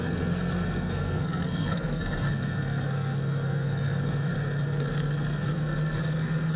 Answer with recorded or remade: remade